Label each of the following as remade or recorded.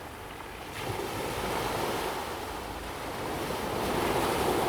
remade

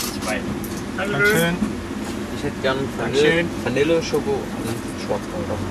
recorded